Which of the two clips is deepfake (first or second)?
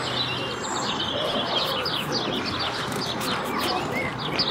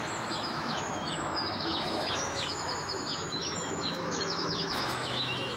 second